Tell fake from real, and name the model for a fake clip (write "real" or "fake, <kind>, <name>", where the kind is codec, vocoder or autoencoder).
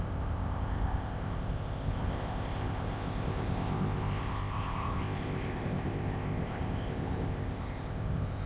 fake, codec, ZipCodec